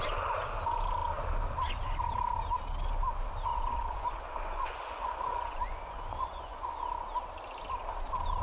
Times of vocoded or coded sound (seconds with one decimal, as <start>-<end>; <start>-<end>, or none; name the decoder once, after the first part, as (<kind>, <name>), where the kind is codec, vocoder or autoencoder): 3.5-6.8 (vocoder, Vocos)